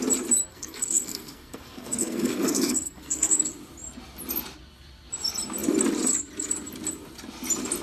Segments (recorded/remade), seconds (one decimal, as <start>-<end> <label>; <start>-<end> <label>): 0.0-0.5 recorded; 0.5-3.3 remade; 3.3-7.8 recorded

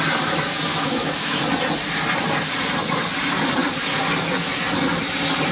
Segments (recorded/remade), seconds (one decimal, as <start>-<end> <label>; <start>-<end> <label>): 0.0-0.7 recorded; 0.7-1.4 remade; 1.4-5.5 recorded

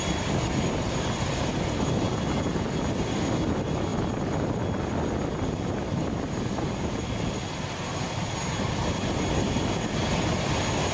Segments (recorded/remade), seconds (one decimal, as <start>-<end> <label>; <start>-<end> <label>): 0.0-10.9 recorded

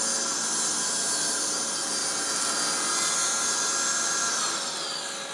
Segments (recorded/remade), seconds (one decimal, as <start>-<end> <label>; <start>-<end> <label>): 0.0-5.3 recorded

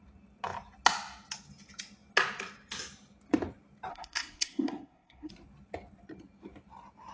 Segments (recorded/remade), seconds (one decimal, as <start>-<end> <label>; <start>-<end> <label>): 0.0-3.9 recorded; 3.9-5.3 remade; 5.3-7.1 recorded

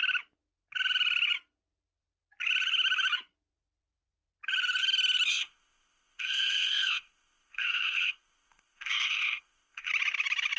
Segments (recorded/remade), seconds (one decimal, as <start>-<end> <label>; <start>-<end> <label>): 0.0-5.3 recorded; 5.3-9.9 remade; 9.9-10.6 recorded

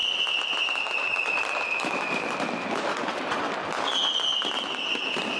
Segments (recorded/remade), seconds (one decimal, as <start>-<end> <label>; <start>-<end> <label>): 0.0-2.9 recorded; 2.9-3.5 remade; 3.5-5.4 recorded

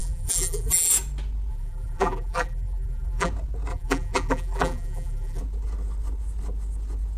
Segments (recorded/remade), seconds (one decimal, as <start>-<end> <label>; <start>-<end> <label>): 0.0-0.9 remade; 0.9-1.5 recorded; 1.5-3.3 remade; 3.3-3.7 recorded; 3.7-5.4 remade; 5.4-7.2 recorded